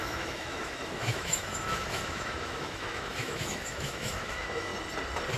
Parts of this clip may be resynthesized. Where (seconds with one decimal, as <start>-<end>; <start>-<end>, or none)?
0.0-4.7